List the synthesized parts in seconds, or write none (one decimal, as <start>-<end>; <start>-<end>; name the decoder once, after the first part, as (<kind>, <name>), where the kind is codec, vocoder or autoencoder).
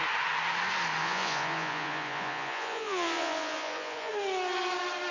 1.0-4.1 (vocoder, Vocos)